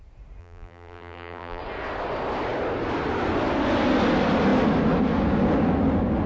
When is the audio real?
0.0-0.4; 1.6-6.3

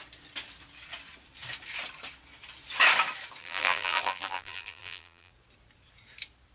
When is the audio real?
0.0-3.4; 5.3-6.5

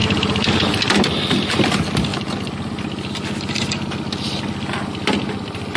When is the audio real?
0.9-5.8

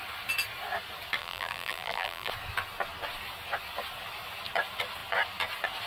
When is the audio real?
0.0-1.2; 2.3-5.9

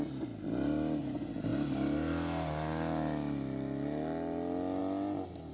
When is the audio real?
0.0-5.5

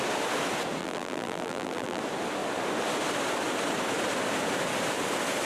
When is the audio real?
0.0-0.8; 2.0-5.5